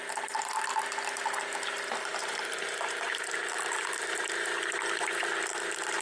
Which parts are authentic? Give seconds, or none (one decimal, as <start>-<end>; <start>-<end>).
0.0-2.1

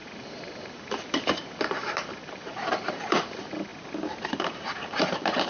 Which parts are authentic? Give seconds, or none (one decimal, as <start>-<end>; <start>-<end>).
3.7-4.3

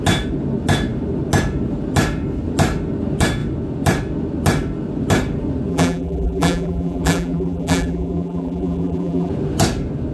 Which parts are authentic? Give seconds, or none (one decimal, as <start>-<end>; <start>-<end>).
0.0-5.7; 9.3-10.1